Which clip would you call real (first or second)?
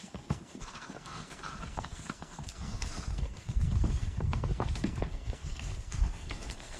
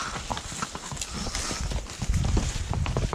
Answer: second